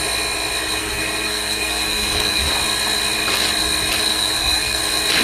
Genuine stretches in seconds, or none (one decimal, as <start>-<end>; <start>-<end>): 0.0-0.8; 2.5-4.1; 4.8-5.2